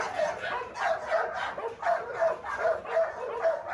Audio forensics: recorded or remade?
recorded